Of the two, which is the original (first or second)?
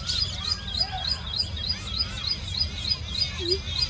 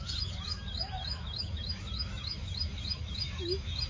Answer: first